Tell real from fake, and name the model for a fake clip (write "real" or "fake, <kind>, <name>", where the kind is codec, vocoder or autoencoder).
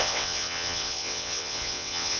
fake, vocoder, WaveNeXt